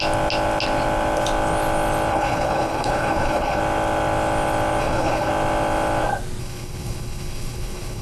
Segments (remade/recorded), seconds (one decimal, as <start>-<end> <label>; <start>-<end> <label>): 0.0-2.1 recorded; 2.1-3.6 remade; 3.6-4.8 recorded; 4.8-5.3 remade; 5.3-6.4 recorded; 6.4-8.0 remade